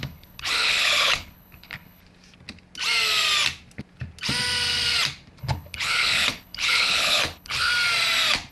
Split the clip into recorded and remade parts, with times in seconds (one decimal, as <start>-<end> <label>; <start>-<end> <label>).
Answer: 0.0-2.0 remade; 2.0-5.4 recorded; 5.4-7.7 remade; 7.7-8.5 recorded